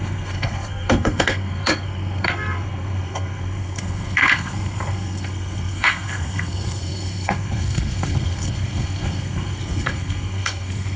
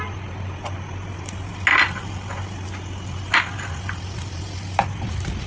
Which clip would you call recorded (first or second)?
second